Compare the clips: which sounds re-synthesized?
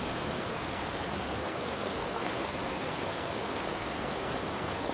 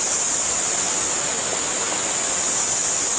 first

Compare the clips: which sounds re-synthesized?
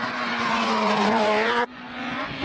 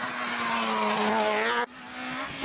first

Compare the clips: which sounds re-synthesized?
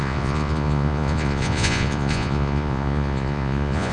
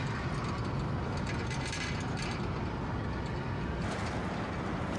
first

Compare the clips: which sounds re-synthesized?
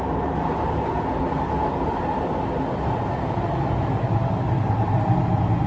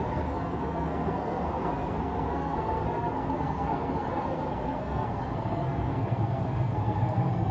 second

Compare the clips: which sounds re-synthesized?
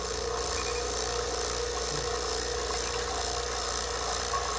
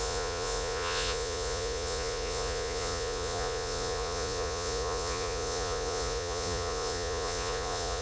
second